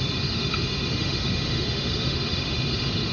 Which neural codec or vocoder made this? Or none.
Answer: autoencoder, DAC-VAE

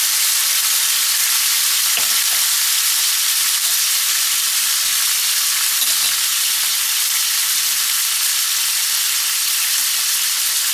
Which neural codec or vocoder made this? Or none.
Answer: none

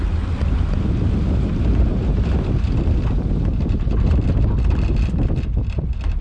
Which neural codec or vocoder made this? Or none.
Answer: none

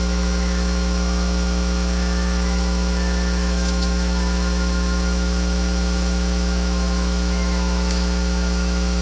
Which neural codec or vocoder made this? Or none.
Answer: autoencoder, DAC-VAE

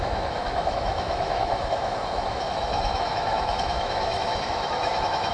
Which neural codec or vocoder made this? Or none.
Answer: autoencoder, DAC-VAE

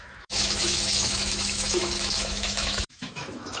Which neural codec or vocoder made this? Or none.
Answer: autoencoder, DAC-VAE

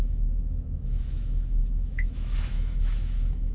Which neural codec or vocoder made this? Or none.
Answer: autoencoder, DAC-VAE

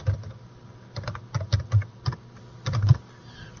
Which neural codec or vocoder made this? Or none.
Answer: none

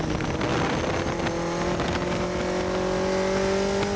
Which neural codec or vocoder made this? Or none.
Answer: none